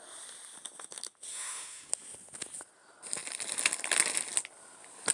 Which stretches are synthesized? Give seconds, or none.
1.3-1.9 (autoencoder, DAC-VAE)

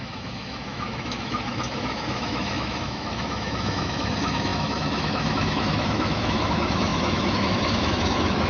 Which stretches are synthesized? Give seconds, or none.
0.0-8.5 (autoencoder, DAC-VAE)

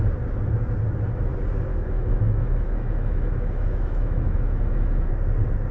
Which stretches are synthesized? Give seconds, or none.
1.7-5.1 (autoencoder, DAC-VAE)

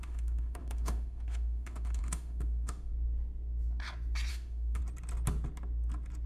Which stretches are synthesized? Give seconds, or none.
0.0-2.9 (autoencoder, DAC-VAE); 4.3-4.8

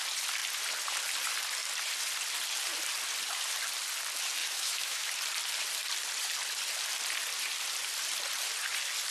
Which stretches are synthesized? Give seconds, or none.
4.4-5.1 (autoencoder, DAC-VAE)